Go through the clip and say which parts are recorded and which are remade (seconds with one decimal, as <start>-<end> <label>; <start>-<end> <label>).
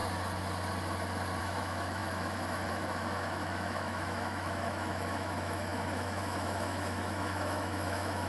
0.0-1.4 recorded; 1.4-8.3 remade